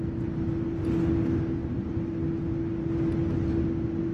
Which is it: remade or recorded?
recorded